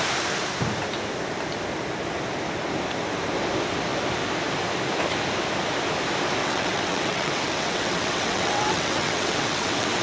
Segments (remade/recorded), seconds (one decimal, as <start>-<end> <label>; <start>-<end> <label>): 0.0-6.4 recorded; 6.4-10.0 remade